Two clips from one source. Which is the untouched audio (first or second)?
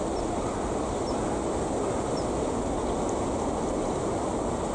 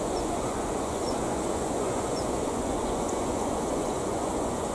first